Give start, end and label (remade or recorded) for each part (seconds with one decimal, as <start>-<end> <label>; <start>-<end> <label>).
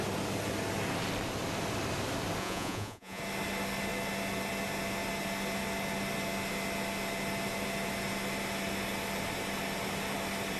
0.0-2.4 recorded; 2.4-3.2 remade; 3.2-10.6 recorded